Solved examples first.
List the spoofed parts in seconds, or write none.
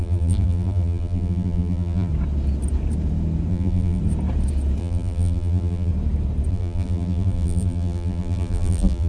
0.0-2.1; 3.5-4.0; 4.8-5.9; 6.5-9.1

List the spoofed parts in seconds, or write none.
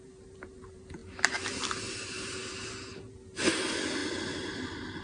0.0-4.0; 4.5-5.0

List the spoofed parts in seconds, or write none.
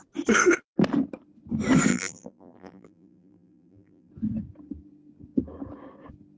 1.9-4.1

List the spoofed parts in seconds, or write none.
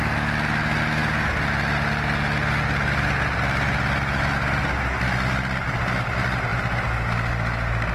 none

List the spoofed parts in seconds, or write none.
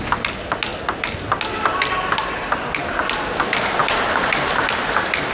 3.8-4.5